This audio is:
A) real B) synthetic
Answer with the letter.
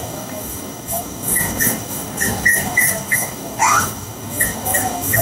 B